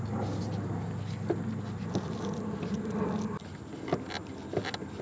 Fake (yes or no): no